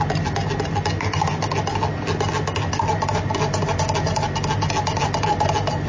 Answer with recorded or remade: recorded